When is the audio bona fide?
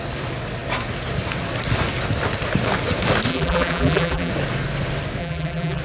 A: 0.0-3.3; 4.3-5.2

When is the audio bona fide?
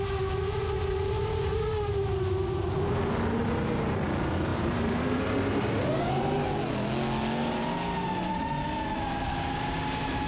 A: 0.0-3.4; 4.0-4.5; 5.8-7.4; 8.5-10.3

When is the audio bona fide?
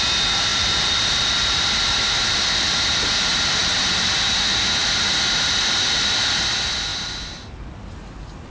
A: 0.0-0.5; 3.0-3.6; 4.1-4.8; 6.4-8.5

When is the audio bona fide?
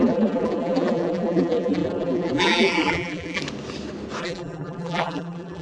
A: 3.4-4.2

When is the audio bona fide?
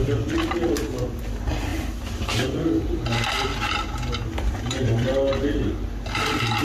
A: 1.2-1.7; 5.7-6.6